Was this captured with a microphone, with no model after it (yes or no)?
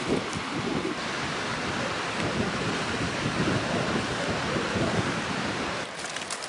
no